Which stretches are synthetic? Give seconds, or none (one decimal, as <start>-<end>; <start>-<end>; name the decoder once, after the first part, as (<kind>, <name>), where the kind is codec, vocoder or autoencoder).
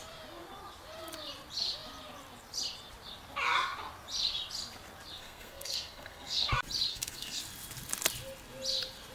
5.2-6.5 (codec, SNAC); 6.9-7.4